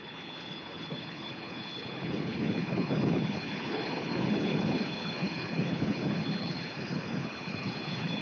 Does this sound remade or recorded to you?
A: remade